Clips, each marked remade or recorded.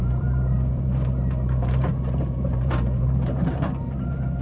remade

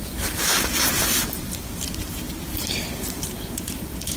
remade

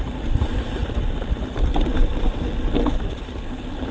recorded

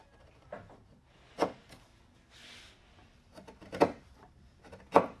recorded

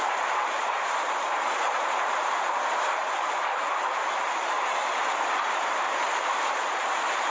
remade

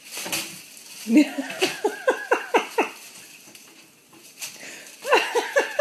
recorded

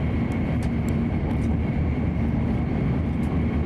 remade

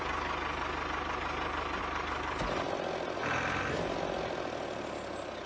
recorded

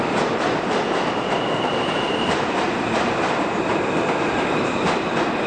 remade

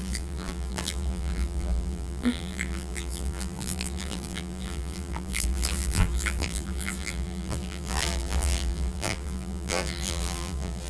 remade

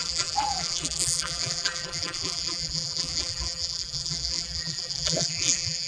remade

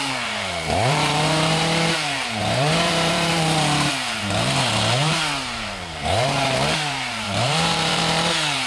remade